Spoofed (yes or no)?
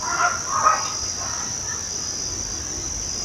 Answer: no